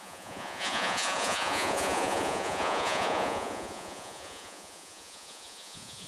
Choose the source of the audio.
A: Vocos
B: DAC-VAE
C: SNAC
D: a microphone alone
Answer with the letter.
A